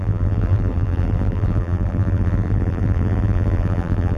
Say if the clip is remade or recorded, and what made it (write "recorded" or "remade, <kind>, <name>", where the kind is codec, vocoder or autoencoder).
remade, vocoder, BigVGAN v2